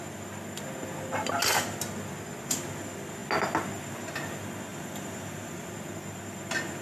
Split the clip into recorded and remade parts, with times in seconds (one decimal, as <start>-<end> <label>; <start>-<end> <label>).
0.0-4.7 recorded; 4.7-5.7 remade; 5.7-6.8 recorded